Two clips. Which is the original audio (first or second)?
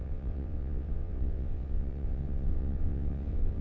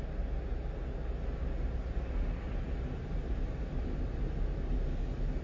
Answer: second